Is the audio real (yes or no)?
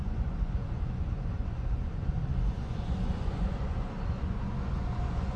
no